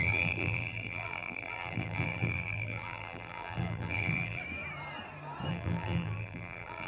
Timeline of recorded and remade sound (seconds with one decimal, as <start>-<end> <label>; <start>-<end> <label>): 0.0-4.4 remade; 4.4-5.5 recorded; 5.5-6.9 remade